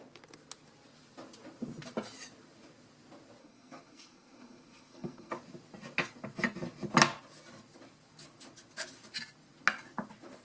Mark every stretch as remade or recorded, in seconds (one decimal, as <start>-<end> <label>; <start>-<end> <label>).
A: 0.0-3.4 recorded; 3.4-5.3 remade; 5.3-10.4 recorded